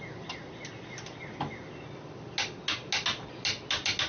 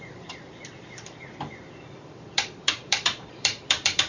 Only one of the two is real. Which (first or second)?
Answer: first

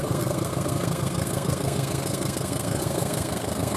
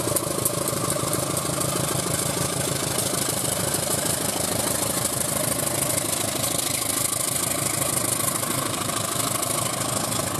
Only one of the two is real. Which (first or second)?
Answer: second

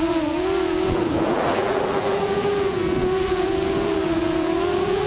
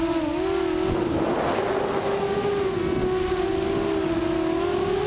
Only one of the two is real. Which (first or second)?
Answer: second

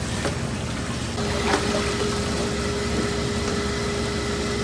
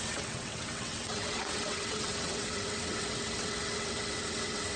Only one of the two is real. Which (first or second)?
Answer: first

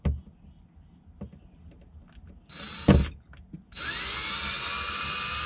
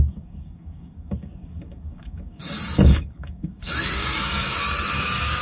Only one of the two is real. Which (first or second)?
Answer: first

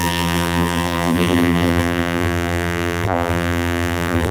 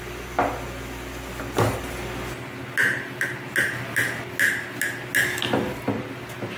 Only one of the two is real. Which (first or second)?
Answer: second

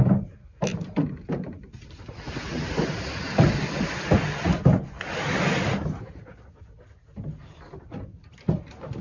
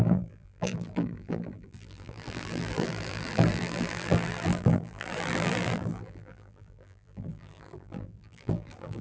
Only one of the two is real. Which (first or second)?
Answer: first